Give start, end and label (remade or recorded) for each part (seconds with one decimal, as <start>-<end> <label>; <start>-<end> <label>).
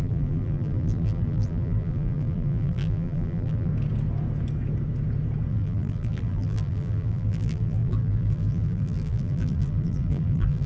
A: 0.0-3.7 remade; 3.7-5.5 recorded; 5.5-10.7 remade